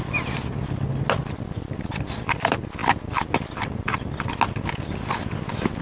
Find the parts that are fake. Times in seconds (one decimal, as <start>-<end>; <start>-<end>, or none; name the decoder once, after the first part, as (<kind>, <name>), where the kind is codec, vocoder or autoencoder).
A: none